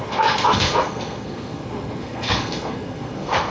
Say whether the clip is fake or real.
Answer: fake